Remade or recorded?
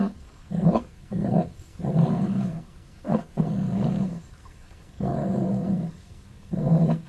remade